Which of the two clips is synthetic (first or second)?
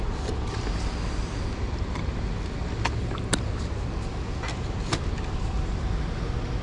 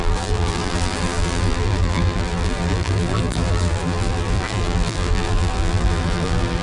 second